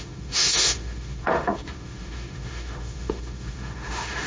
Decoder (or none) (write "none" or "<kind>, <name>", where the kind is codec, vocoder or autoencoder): autoencoder, DAC-VAE